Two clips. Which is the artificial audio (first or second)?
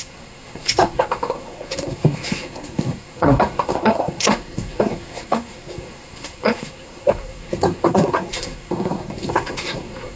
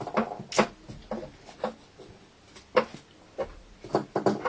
first